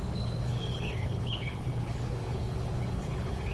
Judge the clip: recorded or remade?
remade